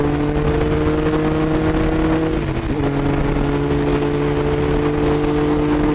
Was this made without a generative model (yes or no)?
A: yes